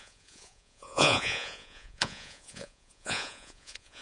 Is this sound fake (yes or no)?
yes